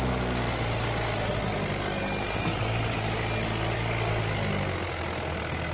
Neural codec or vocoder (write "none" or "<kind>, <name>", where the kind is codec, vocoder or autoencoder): none